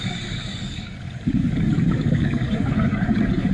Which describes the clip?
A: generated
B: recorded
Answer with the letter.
A